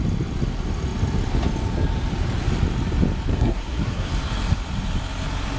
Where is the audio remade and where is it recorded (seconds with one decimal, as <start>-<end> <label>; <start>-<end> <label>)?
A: 0.0-3.3 recorded; 3.3-4.1 remade; 4.1-5.6 recorded